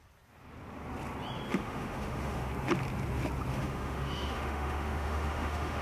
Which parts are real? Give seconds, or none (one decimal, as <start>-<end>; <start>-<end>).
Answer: 0.0-1.5; 2.5-3.5

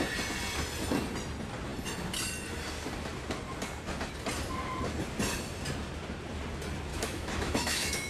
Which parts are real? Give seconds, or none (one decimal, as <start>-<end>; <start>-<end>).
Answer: 0.0-6.9

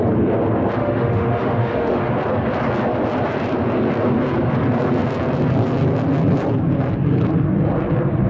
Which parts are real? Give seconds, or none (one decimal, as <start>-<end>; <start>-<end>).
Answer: 0.0-0.8; 2.1-8.3

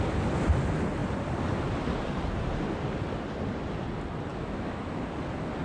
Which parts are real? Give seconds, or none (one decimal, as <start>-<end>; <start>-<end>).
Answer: 0.0-4.3; 5.0-5.6

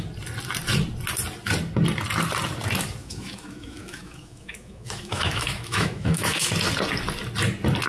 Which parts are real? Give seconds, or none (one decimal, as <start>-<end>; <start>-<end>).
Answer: 0.0-3.0; 6.5-7.9

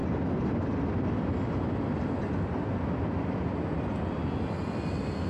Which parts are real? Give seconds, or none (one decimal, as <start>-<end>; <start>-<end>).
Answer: 0.0-5.3